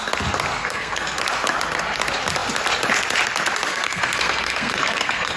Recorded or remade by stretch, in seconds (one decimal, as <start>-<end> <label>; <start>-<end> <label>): 0.0-0.6 recorded; 0.6-1.2 remade; 1.2-3.7 recorded; 3.7-5.4 remade